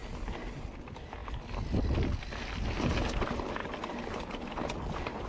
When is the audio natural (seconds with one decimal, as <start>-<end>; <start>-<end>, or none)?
0.0-5.3